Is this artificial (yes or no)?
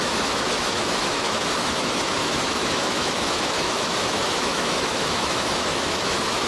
yes